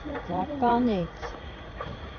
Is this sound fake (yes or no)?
yes